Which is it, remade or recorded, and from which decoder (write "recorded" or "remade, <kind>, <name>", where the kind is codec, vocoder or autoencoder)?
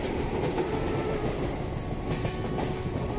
recorded